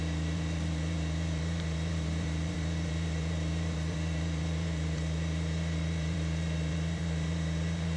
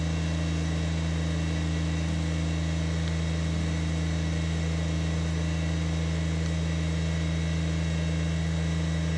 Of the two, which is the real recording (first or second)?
second